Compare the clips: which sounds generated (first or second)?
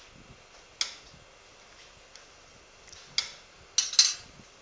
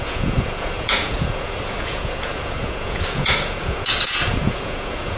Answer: second